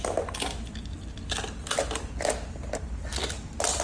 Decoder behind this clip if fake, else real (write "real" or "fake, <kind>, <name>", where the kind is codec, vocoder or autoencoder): real